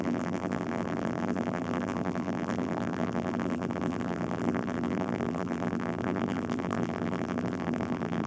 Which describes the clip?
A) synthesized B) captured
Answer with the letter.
A